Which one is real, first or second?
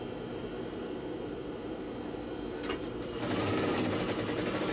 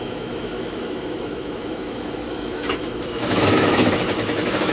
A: first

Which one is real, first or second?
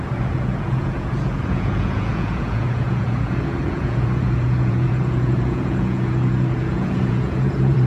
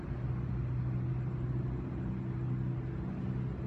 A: second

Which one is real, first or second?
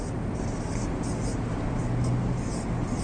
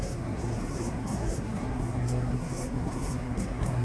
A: first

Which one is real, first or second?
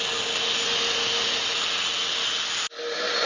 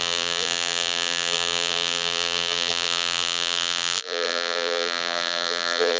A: first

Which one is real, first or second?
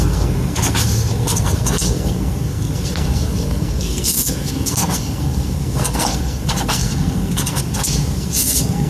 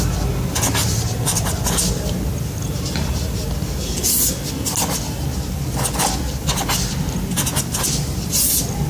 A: second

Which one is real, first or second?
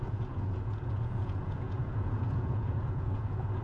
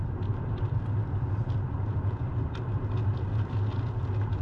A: second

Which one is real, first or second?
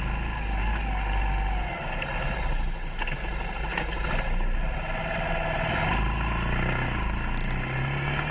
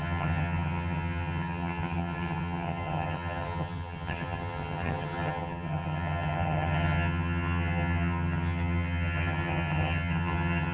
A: first